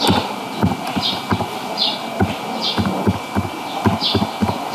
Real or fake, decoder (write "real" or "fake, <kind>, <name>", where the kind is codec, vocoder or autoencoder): real